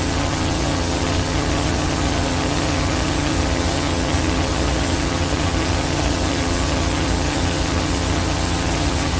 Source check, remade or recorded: remade